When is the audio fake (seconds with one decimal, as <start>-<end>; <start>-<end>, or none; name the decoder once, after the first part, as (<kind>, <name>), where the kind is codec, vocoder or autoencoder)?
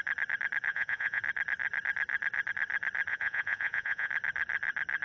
0.7-1.2 (vocoder, Vocos); 3.1-4.1